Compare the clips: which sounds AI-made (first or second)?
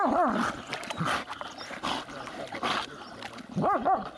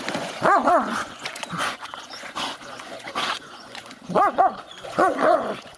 second